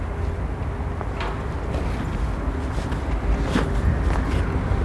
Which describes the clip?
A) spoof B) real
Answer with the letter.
B